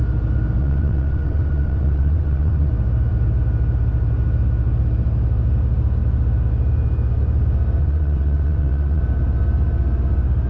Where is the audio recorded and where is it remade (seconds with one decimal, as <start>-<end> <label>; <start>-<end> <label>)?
0.0-0.6 recorded; 0.6-2.7 remade; 2.7-7.8 recorded; 7.8-9.0 remade; 9.0-10.5 recorded

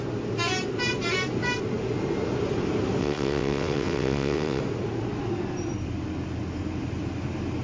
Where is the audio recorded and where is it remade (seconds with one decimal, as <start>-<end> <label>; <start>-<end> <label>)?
0.0-3.0 recorded; 3.0-4.6 remade; 4.6-7.6 recorded

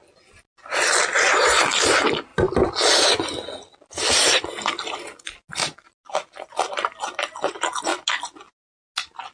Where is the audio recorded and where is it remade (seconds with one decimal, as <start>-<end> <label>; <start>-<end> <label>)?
0.0-9.3 recorded

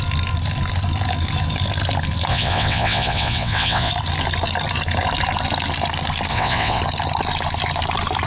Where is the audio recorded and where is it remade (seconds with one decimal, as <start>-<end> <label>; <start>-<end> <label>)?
0.0-2.3 recorded; 2.3-3.9 remade; 3.9-6.3 recorded; 6.3-6.8 remade; 6.8-8.3 recorded